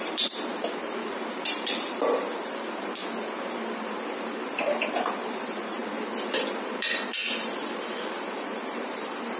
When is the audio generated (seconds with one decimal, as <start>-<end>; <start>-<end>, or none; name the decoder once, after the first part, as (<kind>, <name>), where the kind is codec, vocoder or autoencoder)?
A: 0.0-3.0 (vocoder, BigVGAN v2); 3.5-9.4